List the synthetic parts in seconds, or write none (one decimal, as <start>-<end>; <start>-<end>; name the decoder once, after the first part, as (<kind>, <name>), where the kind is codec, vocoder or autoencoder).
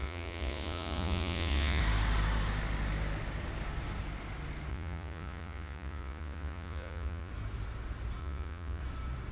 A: 0.0-1.8 (vocoder, Vocos); 4.7-7.3; 8.2-8.8